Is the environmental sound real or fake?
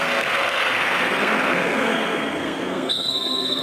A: fake